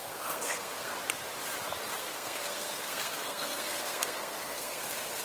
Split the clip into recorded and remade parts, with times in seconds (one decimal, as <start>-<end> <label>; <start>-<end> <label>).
0.0-0.9 remade; 0.9-2.0 recorded; 2.0-5.2 remade